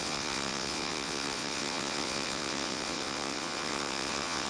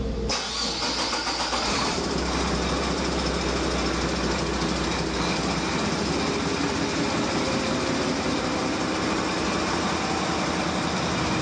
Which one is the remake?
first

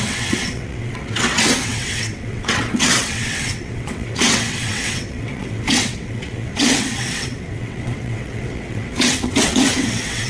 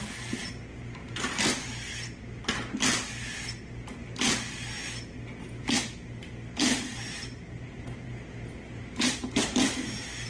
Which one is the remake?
first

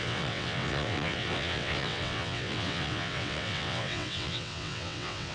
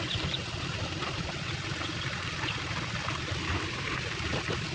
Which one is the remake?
first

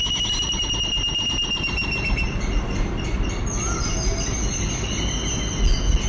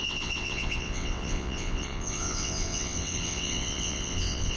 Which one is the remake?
second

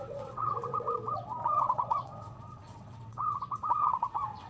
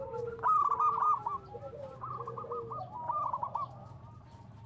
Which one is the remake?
first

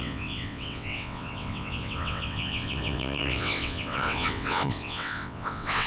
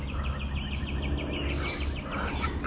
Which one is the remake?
first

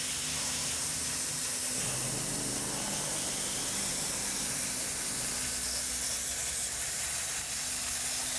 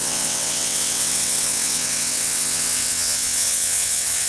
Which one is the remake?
second